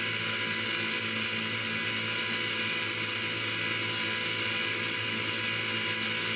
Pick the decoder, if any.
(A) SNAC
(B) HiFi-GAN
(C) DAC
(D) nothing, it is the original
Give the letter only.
D